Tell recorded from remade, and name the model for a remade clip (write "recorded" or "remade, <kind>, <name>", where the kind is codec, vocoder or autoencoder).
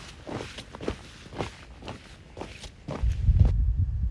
recorded